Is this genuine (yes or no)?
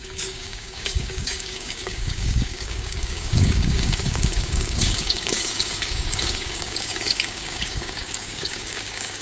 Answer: no